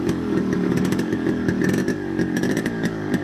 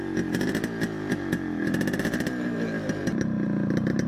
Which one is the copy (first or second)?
first